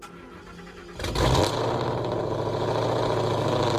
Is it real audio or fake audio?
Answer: real